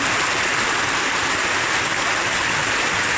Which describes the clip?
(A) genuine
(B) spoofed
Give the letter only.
A